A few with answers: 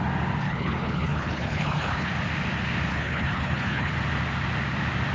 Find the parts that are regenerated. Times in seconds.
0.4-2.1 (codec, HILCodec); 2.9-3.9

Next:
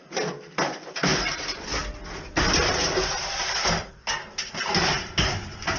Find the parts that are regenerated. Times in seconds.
none

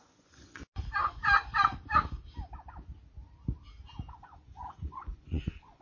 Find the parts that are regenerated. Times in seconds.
0.0-0.6 (vocoder, Vocos); 4.1-5.8

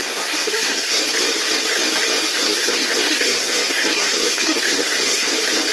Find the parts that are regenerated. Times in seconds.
0.0-1.0 (codec, SNAC); 2.3-5.3

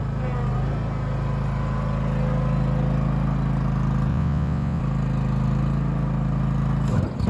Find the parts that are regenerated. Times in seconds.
4.1-4.8 (vocoder, Vocos)

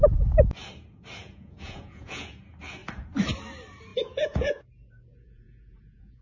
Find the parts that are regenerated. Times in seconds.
1.2-2.4 (vocoder, Vocos); 3.9-6.2